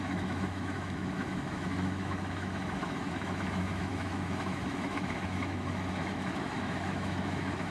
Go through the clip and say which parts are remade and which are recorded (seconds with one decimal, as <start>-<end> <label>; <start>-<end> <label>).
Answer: 0.0-7.7 remade